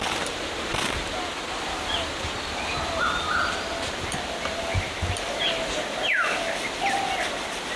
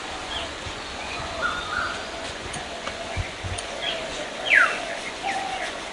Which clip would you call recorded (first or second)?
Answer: first